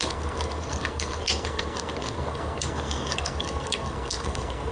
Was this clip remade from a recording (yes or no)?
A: yes